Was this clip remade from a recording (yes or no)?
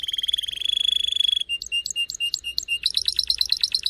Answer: no